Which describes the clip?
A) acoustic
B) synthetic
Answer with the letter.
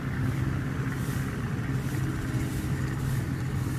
A